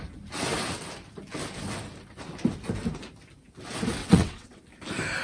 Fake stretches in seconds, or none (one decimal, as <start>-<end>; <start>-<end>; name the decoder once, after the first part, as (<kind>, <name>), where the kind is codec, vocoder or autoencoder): 4.0-4.6 (vocoder, WaveNeXt)